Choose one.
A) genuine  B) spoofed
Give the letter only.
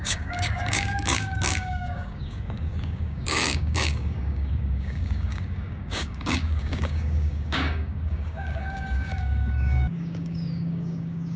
B